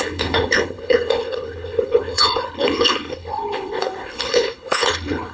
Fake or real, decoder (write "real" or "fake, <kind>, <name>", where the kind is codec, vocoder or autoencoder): fake, codec, HILCodec